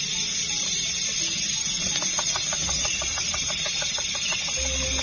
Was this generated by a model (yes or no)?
no